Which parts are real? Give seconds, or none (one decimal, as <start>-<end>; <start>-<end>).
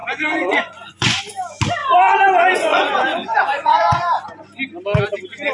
1.2-1.8; 4.2-5.5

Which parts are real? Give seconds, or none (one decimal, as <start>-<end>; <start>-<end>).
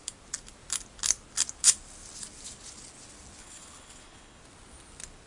0.0-3.4; 4.4-5.3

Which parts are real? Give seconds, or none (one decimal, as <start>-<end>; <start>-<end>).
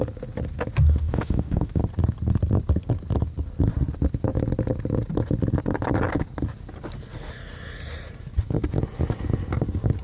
0.0-1.0; 1.8-10.0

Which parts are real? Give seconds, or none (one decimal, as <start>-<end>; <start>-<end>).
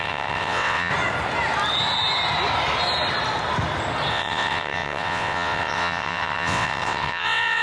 0.9-4.1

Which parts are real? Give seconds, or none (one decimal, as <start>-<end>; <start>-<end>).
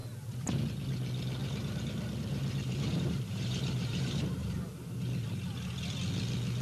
0.0-1.4; 4.6-6.6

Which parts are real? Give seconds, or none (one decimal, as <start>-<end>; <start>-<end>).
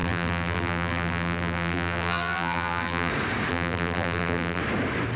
3.1-3.5; 4.6-5.2